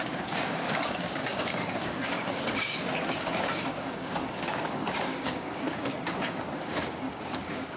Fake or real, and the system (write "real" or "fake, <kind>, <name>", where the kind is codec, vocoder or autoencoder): fake, codec, DAC